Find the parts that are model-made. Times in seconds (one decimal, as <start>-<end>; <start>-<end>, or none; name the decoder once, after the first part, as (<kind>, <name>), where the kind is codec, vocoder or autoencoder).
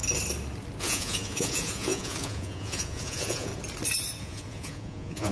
0.8-3.5 (vocoder, Vocos); 4.2-5.3